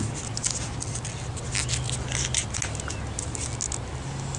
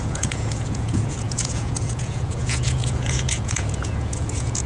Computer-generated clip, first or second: second